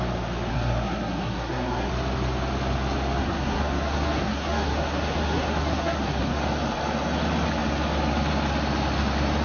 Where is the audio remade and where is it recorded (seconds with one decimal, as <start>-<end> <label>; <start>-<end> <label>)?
0.0-0.5 recorded; 0.5-1.9 remade; 1.9-3.2 recorded; 3.2-6.4 remade; 6.4-9.4 recorded